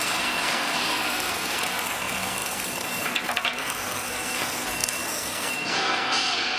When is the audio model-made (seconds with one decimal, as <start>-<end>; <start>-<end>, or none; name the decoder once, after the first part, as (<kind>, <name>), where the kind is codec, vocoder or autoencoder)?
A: 0.0-6.6 (codec, SNAC)